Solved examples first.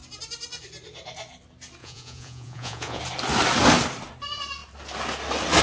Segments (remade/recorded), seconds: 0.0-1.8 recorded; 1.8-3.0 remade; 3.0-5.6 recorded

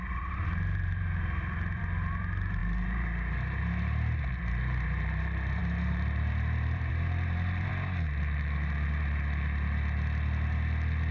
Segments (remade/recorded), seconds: 0.0-7.7 remade; 7.7-11.1 recorded

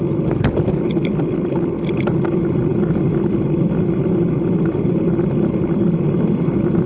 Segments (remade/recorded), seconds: 0.0-6.9 recorded

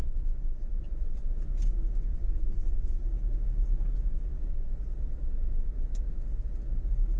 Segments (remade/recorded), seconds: 0.0-2.1 recorded; 2.1-2.9 remade; 2.9-7.2 recorded

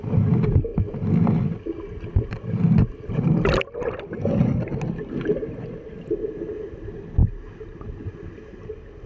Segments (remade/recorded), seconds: 0.0-9.1 recorded

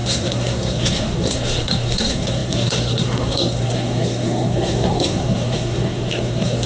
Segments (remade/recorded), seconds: 0.0-6.7 remade